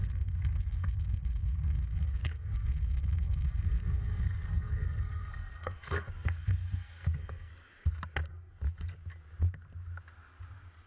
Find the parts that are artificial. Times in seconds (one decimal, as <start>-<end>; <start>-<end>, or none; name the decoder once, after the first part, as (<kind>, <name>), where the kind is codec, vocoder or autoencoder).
0.0-7.5 (codec, SNAC)